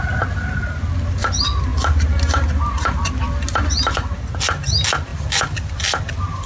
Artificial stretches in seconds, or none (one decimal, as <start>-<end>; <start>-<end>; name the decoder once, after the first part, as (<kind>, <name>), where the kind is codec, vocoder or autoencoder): 5.1-5.7 (vocoder, BigVGAN v2)

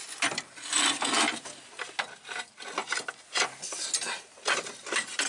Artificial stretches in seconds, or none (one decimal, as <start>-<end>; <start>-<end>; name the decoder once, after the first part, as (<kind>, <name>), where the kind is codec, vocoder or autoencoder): none

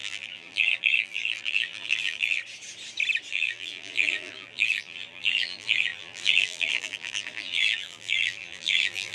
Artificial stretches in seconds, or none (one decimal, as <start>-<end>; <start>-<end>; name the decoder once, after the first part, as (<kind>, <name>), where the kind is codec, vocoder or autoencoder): 0.0-2.4 (vocoder, BigVGAN v2); 3.3-9.1

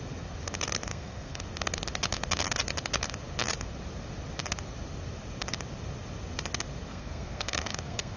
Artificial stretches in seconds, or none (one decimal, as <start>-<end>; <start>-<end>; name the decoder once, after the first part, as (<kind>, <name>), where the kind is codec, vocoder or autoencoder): 0.9-1.4 (codec, SNAC); 6.9-8.2